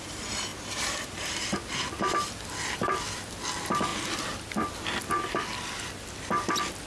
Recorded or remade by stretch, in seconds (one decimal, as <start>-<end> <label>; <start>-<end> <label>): 0.0-0.5 recorded; 0.5-1.3 remade; 1.3-6.9 recorded

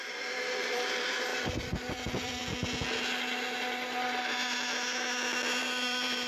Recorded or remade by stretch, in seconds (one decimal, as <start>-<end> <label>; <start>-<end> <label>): 0.0-1.3 remade; 1.3-1.9 recorded; 1.9-2.4 remade; 2.4-5.6 recorded; 5.6-6.3 remade

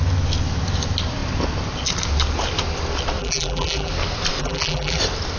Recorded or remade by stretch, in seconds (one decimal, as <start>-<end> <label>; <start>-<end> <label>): 0.0-3.2 recorded; 3.2-3.9 remade; 3.9-4.4 recorded; 4.4-5.0 remade; 5.0-5.4 recorded

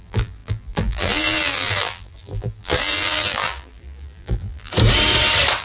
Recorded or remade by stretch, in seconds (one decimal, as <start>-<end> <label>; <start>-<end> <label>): 0.0-4.7 remade; 4.7-5.6 recorded

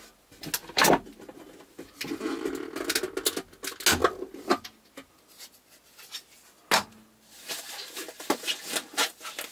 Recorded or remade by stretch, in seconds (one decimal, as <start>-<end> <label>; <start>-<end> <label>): 0.0-9.5 recorded